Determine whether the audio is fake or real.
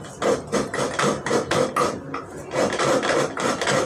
real